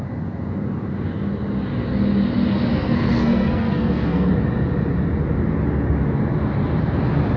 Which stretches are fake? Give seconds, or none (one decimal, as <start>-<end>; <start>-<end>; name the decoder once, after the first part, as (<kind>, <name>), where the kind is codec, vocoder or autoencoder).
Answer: 2.7-4.3 (codec, SNAC)